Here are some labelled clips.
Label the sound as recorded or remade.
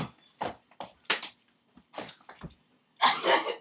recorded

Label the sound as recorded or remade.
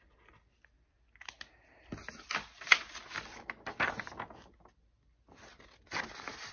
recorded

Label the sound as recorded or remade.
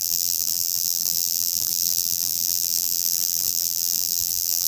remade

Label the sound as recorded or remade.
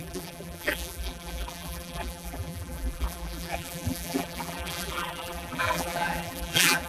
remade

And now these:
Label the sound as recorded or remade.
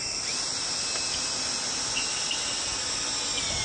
recorded